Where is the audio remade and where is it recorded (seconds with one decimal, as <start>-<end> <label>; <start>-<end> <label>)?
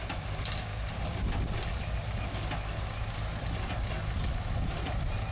0.0-5.3 recorded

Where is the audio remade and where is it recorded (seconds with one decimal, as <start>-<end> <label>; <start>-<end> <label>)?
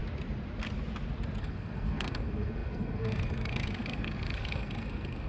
0.0-1.4 recorded; 1.4-5.3 remade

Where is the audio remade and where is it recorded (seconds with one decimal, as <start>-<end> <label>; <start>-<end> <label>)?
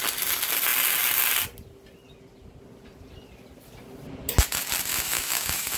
0.0-4.9 recorded; 4.9-5.8 remade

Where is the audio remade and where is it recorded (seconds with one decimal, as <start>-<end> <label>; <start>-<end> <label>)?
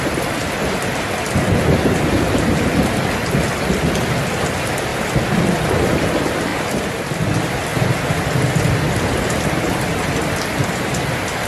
0.0-4.9 recorded; 4.9-5.5 remade; 5.5-7.7 recorded; 7.7-8.7 remade; 8.7-11.5 recorded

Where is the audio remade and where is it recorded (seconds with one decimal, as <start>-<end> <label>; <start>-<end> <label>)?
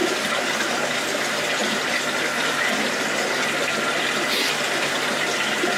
0.0-5.8 recorded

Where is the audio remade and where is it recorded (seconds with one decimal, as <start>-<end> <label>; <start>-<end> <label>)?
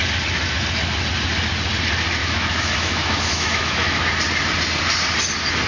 0.0-2.2 recorded; 2.2-4.1 remade; 4.1-5.7 recorded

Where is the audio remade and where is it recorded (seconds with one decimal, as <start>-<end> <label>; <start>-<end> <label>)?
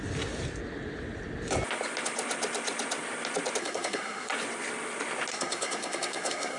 0.0-3.6 recorded; 3.6-4.3 remade; 4.3-5.3 recorded; 5.3-6.6 remade